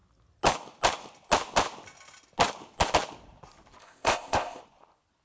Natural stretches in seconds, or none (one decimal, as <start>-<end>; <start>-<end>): 0.0-3.8; 4.6-5.2